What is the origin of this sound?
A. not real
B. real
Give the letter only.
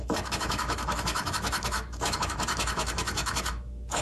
A